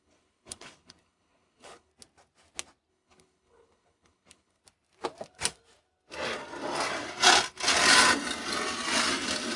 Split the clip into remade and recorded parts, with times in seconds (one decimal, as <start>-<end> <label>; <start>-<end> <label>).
0.0-1.9 remade; 1.9-2.9 recorded; 2.9-4.6 remade; 4.6-9.6 recorded